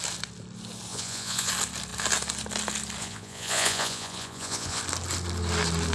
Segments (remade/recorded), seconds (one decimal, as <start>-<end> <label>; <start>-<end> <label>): 0.0-0.9 recorded; 0.9-1.5 remade; 1.5-3.0 recorded; 3.0-4.8 remade; 4.8-5.9 recorded